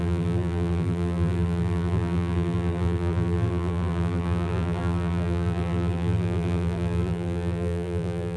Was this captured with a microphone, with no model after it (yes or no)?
no